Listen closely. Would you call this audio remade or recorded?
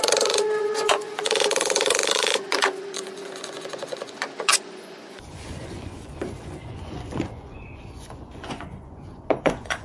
remade